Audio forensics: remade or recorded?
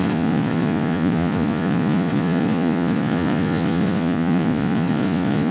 remade